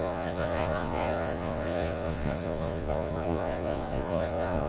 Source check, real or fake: fake